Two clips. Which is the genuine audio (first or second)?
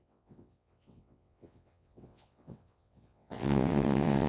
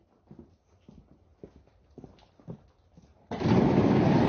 second